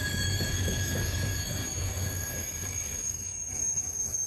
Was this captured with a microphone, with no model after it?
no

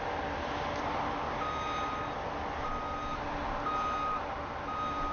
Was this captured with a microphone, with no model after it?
yes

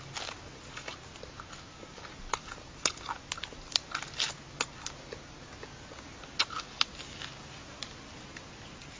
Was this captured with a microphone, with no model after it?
yes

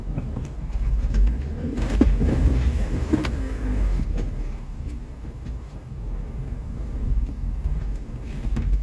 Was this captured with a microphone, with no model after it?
no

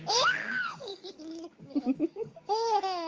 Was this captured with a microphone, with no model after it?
no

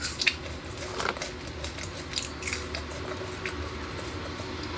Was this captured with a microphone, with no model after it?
yes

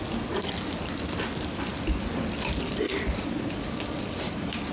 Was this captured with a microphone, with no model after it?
yes